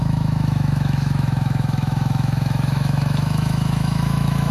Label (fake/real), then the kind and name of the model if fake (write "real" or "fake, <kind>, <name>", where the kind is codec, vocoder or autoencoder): fake, autoencoder, DAC-VAE